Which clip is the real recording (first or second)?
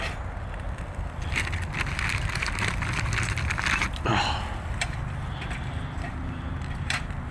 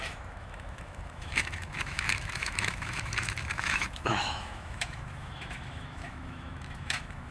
first